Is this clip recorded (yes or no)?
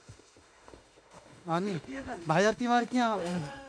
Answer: no